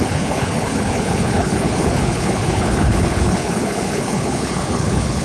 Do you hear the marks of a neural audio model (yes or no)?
yes